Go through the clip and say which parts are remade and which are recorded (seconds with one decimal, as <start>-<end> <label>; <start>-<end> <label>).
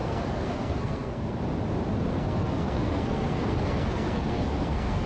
0.0-1.4 remade; 1.4-2.1 recorded; 2.1-5.1 remade